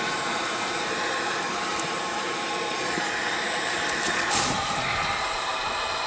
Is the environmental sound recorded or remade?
remade